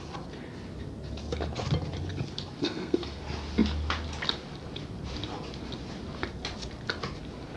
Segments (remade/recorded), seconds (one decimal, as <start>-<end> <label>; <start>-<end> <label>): 0.0-2.6 recorded; 2.6-3.2 remade; 3.2-7.6 recorded